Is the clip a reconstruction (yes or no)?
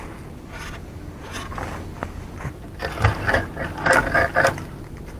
no